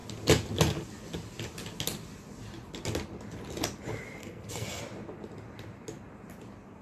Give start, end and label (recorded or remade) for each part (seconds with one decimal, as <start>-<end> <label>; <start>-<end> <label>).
0.0-4.2 recorded; 4.2-4.8 remade; 4.8-6.8 recorded